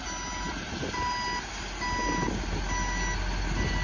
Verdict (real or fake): real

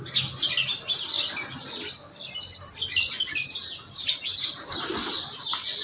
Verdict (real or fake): real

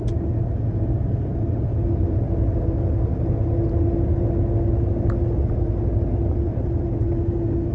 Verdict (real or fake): real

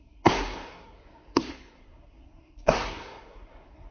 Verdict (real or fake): fake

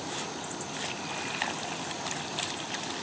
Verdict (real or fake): real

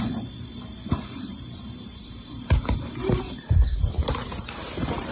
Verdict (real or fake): fake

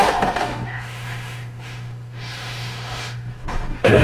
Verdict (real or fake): fake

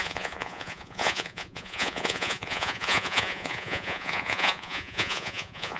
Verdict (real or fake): fake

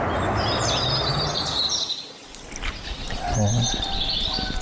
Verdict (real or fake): real